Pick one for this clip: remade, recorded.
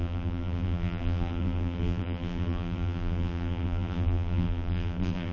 remade